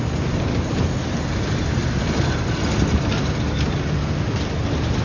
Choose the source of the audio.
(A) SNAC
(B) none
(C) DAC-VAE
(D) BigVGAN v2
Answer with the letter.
B